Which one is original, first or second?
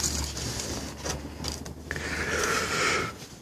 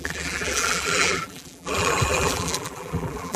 first